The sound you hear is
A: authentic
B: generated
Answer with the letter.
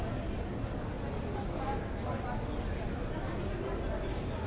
A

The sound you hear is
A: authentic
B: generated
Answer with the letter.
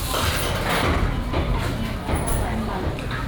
A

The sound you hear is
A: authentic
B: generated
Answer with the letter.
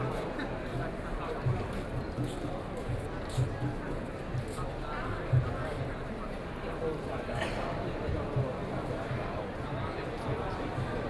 A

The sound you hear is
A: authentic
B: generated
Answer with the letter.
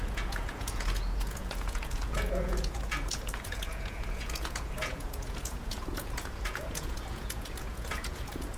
B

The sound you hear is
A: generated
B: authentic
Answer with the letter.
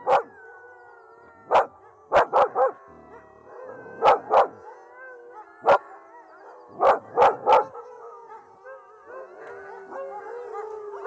B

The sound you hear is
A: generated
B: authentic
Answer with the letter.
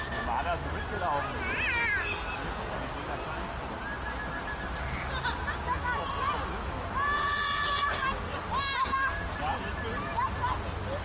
B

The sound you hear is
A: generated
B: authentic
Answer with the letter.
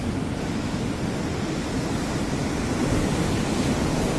B